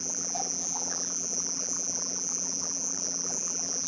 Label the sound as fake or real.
fake